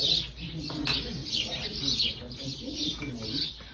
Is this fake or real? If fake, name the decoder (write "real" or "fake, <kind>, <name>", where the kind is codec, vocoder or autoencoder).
real